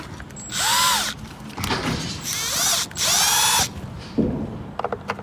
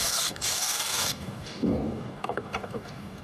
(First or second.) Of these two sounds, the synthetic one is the second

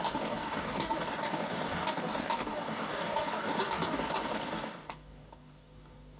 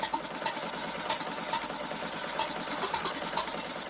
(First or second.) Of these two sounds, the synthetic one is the first